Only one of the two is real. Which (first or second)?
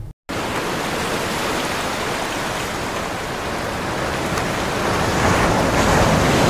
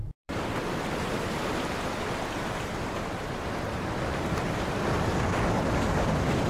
first